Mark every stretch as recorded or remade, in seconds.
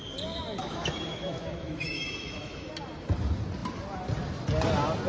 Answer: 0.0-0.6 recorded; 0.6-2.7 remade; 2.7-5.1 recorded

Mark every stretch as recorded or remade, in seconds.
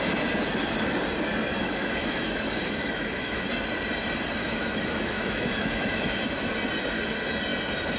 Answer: 0.0-1.6 recorded; 1.6-3.5 remade; 3.5-4.4 recorded; 4.4-6.5 remade; 6.5-8.0 recorded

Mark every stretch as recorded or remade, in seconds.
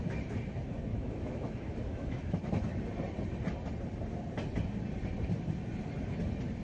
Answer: 0.0-0.9 recorded; 0.9-2.8 remade; 2.8-6.6 recorded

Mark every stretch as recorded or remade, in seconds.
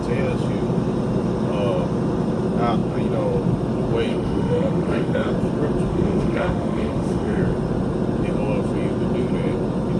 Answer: 0.0-4.1 recorded; 4.1-5.3 remade; 5.3-5.9 recorded; 5.9-7.4 remade; 7.4-10.0 recorded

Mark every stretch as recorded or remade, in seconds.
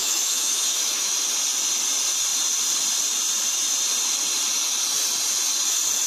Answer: 0.0-1.1 remade; 1.1-6.1 recorded